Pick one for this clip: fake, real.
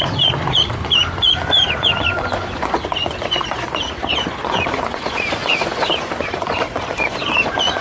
fake